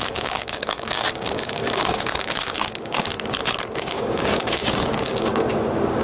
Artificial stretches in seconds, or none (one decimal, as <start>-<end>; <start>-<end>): 0.0-3.1; 3.7-6.0